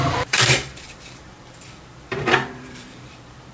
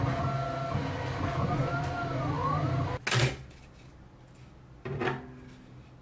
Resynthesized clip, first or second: first